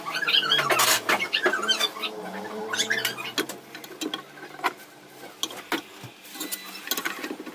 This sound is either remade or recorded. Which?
recorded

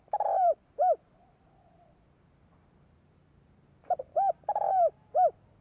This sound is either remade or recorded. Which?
remade